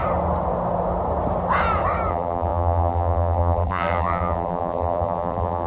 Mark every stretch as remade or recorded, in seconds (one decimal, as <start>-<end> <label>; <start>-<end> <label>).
0.0-2.1 recorded; 2.1-5.7 remade